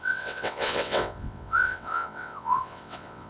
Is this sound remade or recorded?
remade